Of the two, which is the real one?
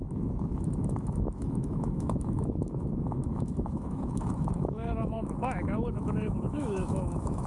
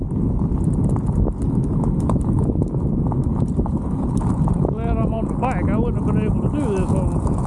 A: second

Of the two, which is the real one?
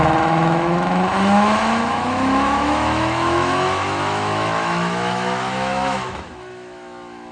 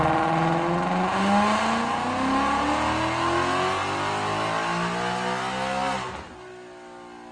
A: second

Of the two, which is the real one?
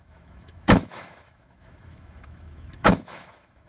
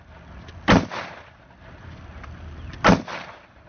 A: second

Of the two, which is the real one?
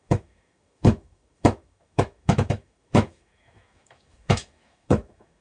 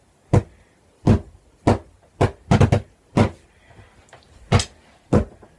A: second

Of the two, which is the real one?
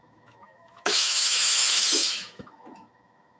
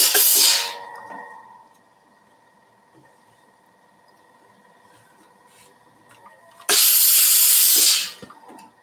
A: second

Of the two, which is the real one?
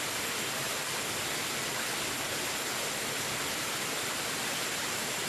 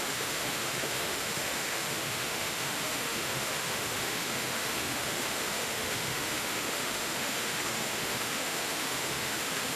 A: first